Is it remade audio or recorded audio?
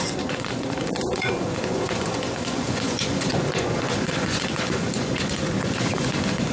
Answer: remade